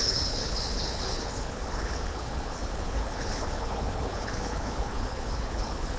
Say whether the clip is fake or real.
fake